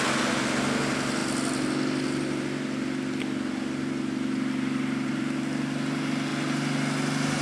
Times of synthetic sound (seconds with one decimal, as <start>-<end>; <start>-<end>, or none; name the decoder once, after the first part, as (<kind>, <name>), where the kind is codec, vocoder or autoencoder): none